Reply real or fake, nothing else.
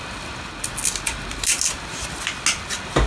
real